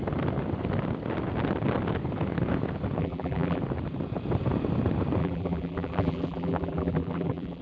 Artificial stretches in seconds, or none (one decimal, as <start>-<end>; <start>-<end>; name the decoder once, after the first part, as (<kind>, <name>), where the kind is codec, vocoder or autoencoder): 3.0-3.6 (vocoder, BigVGAN v2); 5.2-7.6